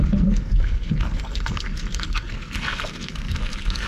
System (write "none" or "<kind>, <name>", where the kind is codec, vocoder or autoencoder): codec, SNAC